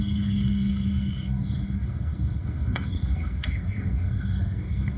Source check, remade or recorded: remade